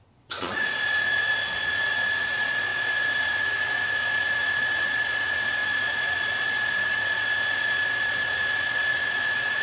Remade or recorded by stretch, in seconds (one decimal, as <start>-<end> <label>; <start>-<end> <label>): 0.0-9.6 remade

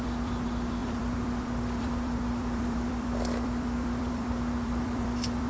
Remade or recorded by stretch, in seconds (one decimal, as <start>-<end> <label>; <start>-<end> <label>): 0.0-5.5 remade

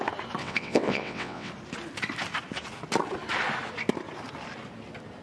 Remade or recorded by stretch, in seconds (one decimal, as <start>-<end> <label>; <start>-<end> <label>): 0.0-0.4 recorded; 0.4-1.5 remade; 1.5-5.2 recorded

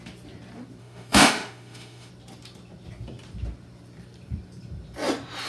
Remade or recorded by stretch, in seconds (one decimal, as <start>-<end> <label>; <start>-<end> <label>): 0.0-0.8 recorded; 0.8-2.1 remade; 2.1-5.5 recorded

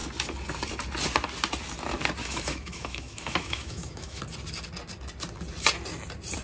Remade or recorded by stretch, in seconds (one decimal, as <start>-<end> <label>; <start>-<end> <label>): 0.0-2.2 recorded; 2.2-4.2 remade; 4.2-6.4 recorded

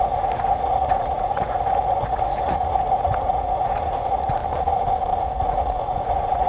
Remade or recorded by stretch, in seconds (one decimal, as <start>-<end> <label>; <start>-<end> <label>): 0.0-4.4 remade; 4.4-5.2 recorded; 5.2-6.5 remade

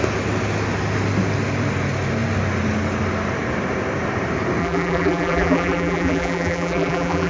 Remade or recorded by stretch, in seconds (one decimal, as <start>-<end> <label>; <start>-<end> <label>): 0.0-4.6 recorded; 4.6-7.3 remade

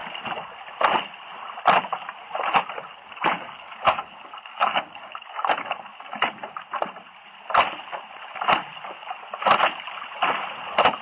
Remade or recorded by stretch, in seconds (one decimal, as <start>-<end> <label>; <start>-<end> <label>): 0.0-2.9 recorded; 2.9-6.1 remade; 6.1-11.0 recorded